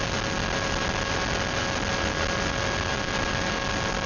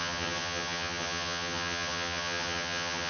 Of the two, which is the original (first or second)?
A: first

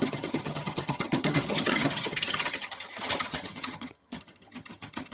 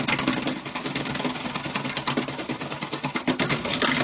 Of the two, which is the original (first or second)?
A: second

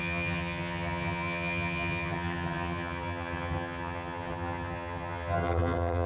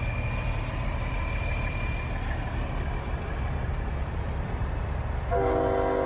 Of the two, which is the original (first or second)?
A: second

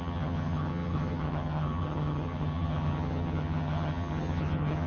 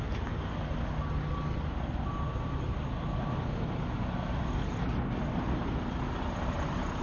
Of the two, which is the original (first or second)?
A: second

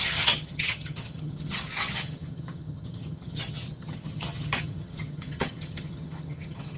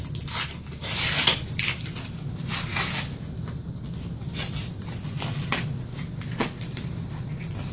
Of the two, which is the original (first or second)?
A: second